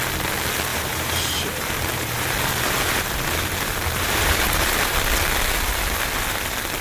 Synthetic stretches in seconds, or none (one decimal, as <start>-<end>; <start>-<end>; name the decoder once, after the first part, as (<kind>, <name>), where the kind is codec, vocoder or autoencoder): 0.7-4.8 (vocoder, BigVGAN v2)